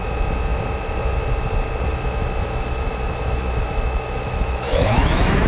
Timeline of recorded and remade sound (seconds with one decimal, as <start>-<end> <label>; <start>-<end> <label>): 0.0-1.9 recorded; 1.9-5.5 remade